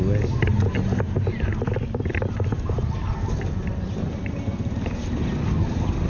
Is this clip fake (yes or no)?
no